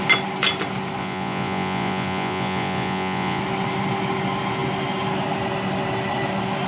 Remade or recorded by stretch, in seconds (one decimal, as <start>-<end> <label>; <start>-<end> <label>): 0.0-1.0 recorded; 1.0-3.4 remade; 3.4-6.7 recorded